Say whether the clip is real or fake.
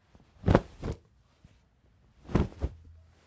real